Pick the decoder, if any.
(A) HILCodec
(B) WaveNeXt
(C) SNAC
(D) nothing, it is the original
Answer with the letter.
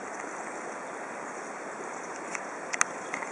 D